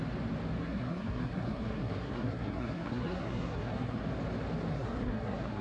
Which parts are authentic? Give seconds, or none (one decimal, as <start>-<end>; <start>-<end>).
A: 0.0-0.6; 4.0-4.7